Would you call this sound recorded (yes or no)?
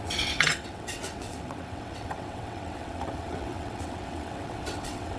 no